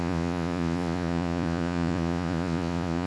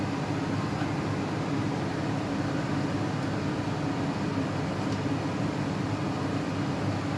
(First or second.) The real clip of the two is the second